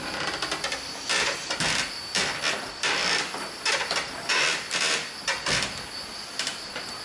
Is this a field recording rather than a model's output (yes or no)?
yes